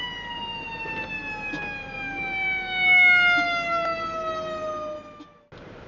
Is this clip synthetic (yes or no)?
no